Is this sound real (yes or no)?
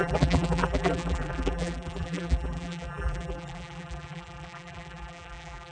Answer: no